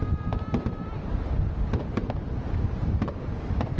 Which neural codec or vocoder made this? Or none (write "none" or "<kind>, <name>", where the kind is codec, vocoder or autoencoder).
none